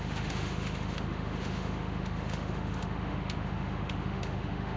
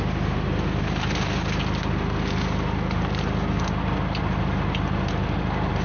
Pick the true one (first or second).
second